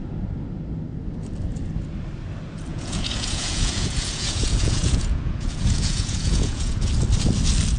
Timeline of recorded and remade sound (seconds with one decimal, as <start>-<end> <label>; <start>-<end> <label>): 0.0-2.7 recorded; 2.7-6.9 remade; 6.9-7.8 recorded

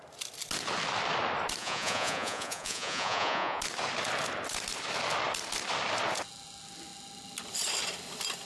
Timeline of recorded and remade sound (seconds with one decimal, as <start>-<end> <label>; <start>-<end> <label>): 0.0-1.6 recorded; 1.6-3.6 remade; 3.6-8.4 recorded

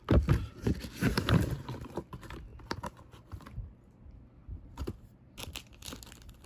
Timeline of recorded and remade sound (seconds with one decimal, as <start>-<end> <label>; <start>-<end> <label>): 0.0-2.5 recorded; 2.5-3.3 remade; 3.3-4.4 recorded; 4.4-5.6 remade; 5.6-6.5 recorded

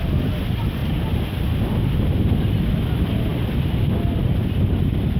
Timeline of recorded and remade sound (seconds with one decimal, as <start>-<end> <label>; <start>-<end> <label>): 0.0-5.2 recorded

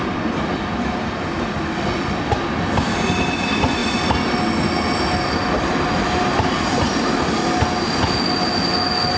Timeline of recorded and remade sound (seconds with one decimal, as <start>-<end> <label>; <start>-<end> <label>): 0.0-9.2 recorded

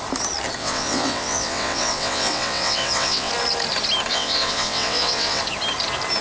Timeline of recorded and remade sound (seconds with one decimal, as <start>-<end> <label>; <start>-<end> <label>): 0.0-0.6 recorded; 0.6-3.3 remade; 3.3-4.1 recorded; 4.1-5.4 remade; 5.4-6.2 recorded

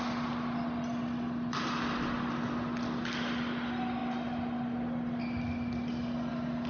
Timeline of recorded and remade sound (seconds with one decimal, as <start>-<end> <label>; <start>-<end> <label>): 0.0-6.7 recorded